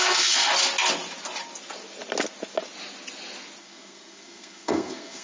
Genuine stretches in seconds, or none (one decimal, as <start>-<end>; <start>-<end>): 0.5-3.6